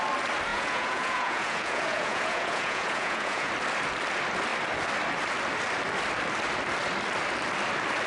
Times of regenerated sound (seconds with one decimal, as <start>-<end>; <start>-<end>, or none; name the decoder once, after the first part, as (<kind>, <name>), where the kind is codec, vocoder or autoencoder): 0.5-3.5 (vocoder, Vocos)